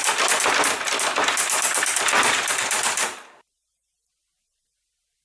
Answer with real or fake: real